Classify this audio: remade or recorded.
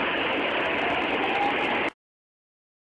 recorded